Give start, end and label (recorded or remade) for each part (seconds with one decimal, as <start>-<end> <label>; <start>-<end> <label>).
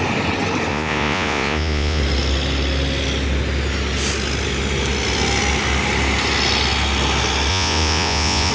0.0-0.7 recorded; 0.7-2.0 remade; 2.0-7.5 recorded; 7.5-8.5 remade